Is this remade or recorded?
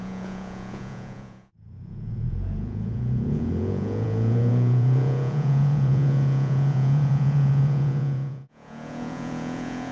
remade